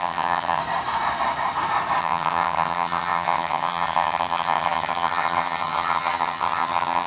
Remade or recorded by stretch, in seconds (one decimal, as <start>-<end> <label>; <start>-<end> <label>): 0.0-0.6 remade; 0.6-2.0 recorded; 2.0-7.1 remade